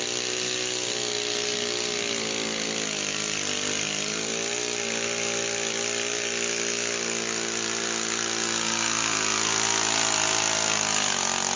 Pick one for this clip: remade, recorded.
recorded